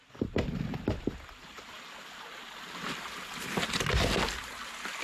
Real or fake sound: real